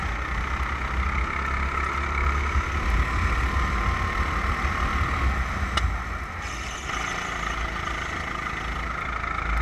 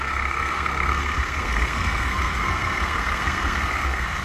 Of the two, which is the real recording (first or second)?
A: first